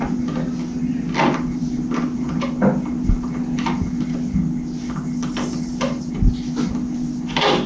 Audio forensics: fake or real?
real